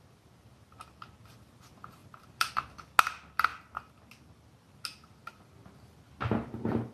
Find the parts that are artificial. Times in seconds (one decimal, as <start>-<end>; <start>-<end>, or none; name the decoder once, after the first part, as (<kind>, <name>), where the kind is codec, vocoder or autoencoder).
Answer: 2.0-2.5 (vocoder, BigVGAN v2); 5.2-5.7